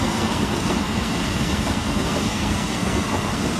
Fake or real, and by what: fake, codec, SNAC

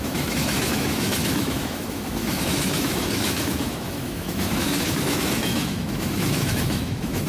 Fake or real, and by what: fake, autoencoder, DAC-VAE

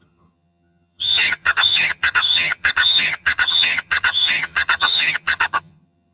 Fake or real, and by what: fake, vocoder, HiFi-GAN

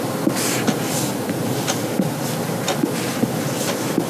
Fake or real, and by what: real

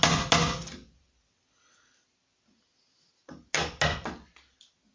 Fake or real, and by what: real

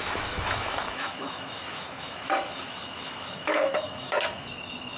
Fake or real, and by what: fake, autoencoder, DAC-VAE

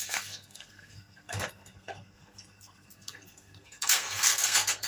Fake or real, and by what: fake, codec, SNAC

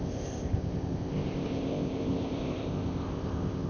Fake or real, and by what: fake, codec, ZipCodec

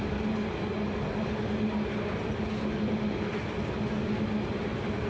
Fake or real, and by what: real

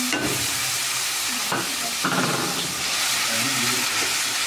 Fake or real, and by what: real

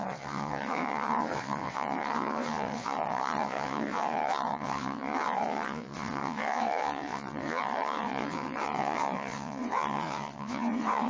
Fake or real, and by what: fake, vocoder, WaveNeXt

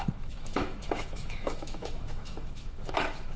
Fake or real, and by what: fake, autoencoder, DAC-VAE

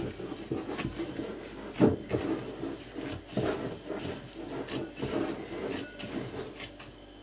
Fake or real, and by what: real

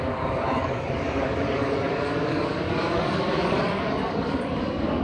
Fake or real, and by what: fake, codec, DAC